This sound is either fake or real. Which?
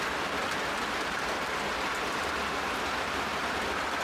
real